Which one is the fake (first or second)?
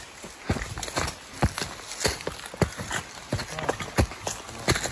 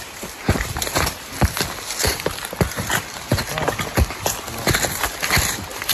second